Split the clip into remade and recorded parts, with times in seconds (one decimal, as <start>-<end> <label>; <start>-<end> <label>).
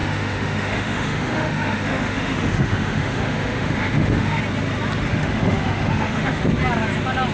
0.0-4.4 remade; 4.4-5.1 recorded; 5.1-6.4 remade; 6.4-7.3 recorded